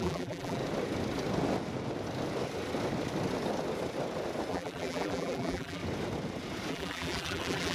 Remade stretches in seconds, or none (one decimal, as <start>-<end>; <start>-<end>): 0.0-0.6; 4.5-5.8; 6.7-7.7